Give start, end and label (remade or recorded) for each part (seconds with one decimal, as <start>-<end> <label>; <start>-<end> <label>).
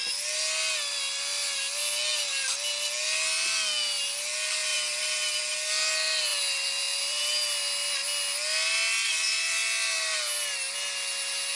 0.0-4.6 recorded; 4.6-5.4 remade; 5.4-6.3 recorded; 6.3-7.2 remade; 7.2-11.6 recorded